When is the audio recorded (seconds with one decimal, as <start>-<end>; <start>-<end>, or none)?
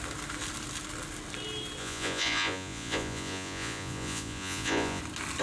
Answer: 0.0-1.8; 5.0-5.4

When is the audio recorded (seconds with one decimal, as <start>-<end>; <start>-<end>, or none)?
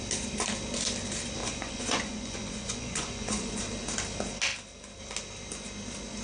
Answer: 0.0-1.4; 3.6-6.2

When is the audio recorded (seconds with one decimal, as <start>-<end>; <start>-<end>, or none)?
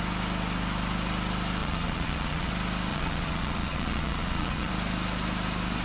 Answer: 0.0-1.6; 2.5-2.9; 4.7-5.8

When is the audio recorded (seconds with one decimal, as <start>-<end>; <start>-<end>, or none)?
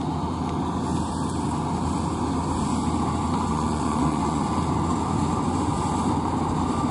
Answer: 0.0-3.5; 4.4-6.9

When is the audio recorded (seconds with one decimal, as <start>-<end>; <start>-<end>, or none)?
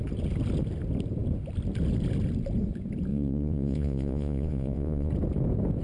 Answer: 0.0-3.1; 5.1-5.8